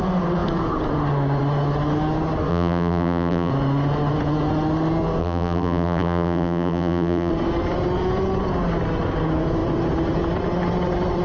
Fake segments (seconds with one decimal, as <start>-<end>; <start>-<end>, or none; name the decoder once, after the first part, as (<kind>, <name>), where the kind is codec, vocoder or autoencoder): 2.5-3.5 (vocoder, BigVGAN v2); 5.2-7.3